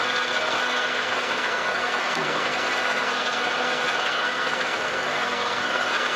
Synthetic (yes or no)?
yes